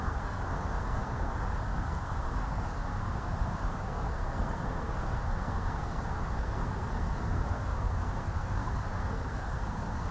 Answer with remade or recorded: remade